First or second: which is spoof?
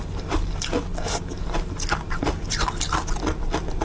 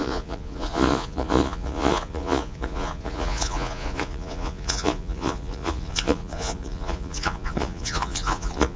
second